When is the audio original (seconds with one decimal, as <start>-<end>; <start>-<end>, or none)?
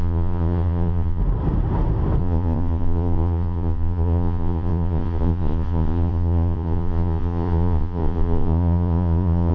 1.2-2.2